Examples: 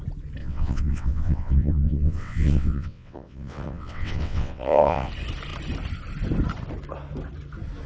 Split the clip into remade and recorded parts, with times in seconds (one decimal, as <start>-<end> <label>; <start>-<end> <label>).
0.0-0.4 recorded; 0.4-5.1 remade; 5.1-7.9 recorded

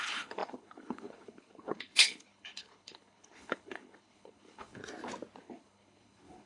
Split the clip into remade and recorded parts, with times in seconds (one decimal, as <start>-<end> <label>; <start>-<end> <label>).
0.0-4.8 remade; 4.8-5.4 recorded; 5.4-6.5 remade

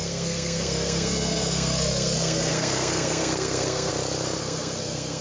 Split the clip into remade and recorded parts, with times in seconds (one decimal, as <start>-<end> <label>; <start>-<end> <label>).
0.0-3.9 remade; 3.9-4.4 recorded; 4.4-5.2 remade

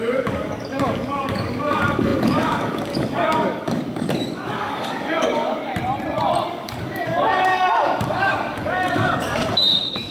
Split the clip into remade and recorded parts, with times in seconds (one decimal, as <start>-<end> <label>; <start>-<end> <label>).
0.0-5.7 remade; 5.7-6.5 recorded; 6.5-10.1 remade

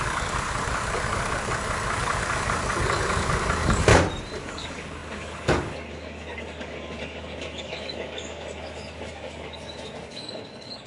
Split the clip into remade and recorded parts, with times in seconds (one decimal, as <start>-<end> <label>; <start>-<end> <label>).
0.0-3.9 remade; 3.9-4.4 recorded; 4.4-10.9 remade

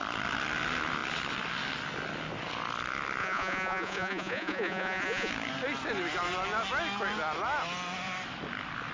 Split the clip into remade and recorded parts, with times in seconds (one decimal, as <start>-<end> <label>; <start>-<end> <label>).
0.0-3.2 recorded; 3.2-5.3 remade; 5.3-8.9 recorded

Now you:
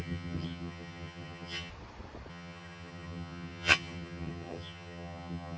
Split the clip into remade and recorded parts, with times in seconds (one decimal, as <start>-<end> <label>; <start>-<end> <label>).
0.0-1.7 remade; 1.7-2.3 recorded; 2.3-5.6 remade